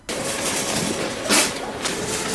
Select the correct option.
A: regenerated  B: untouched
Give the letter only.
B